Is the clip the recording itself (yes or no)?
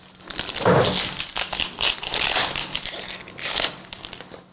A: yes